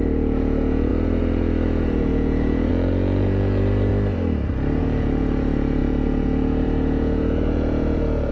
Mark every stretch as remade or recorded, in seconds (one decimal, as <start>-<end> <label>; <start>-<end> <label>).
0.0-3.9 remade; 3.9-4.8 recorded; 4.8-8.3 remade